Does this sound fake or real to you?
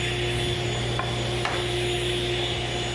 real